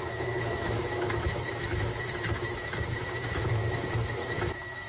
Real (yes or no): no